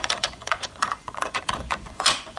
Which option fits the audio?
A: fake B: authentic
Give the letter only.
A